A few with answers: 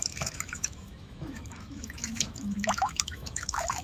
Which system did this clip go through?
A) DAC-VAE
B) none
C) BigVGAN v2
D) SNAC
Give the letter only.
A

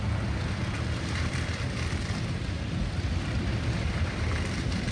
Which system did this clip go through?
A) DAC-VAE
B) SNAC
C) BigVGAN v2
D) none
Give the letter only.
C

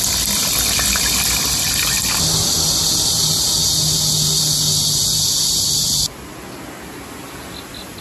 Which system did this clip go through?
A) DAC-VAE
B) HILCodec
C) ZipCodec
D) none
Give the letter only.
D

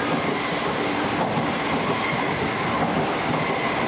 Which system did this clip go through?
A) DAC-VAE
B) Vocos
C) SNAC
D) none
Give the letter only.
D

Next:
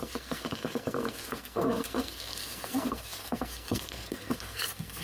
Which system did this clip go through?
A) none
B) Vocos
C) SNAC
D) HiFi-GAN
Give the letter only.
C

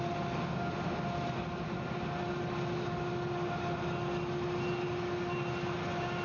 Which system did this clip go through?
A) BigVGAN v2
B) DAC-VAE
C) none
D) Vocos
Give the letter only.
C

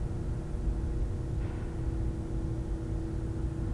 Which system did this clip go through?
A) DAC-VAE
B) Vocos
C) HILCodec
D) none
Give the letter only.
D